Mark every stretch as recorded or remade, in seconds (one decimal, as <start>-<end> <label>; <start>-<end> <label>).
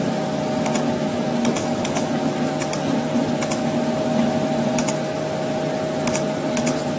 0.0-1.6 recorded; 1.6-2.1 remade; 2.1-7.0 recorded